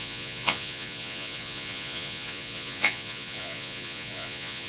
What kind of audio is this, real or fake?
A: fake